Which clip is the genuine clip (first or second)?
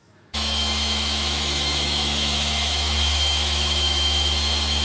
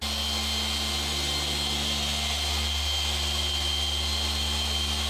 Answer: second